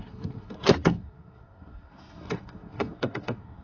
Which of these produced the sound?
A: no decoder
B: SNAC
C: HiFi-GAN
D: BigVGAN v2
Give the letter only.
B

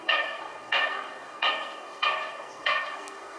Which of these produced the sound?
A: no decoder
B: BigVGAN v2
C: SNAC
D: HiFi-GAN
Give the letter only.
C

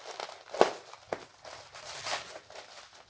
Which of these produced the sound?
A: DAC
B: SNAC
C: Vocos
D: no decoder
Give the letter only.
D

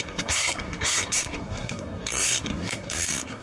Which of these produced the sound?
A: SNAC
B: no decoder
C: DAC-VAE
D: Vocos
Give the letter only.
A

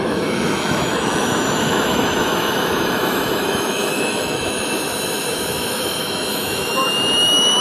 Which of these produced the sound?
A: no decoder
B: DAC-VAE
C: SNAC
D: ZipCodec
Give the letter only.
B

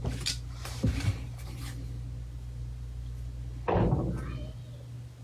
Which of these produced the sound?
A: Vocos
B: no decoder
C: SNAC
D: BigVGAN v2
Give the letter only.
B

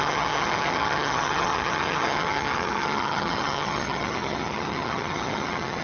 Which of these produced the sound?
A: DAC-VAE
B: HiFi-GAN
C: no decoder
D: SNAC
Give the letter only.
B